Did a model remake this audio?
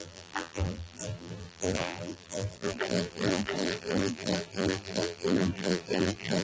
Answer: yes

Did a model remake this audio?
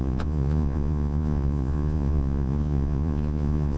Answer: yes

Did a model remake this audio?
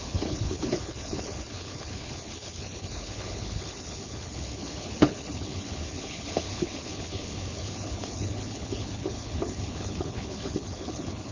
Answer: yes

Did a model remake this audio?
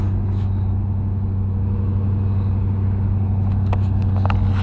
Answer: no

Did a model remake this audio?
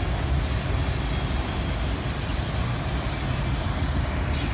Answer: no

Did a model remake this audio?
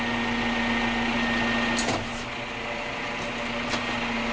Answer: no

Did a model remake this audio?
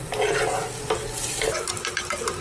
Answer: no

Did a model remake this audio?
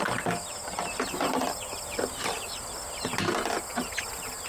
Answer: no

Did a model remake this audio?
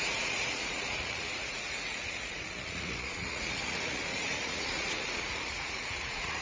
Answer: yes